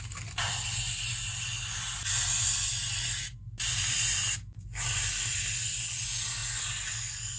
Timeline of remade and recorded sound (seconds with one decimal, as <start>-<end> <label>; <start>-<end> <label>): 0.0-7.4 recorded